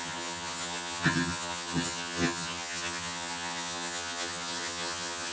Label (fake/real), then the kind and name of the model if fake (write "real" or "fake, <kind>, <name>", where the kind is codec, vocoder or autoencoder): fake, vocoder, HiFi-GAN